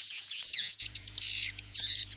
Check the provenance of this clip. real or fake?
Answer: fake